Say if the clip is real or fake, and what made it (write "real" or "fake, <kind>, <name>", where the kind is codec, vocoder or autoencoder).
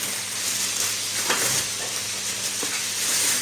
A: real